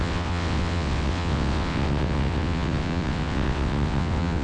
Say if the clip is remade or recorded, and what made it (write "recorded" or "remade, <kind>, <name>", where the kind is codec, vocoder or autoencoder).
remade, vocoder, WaveNeXt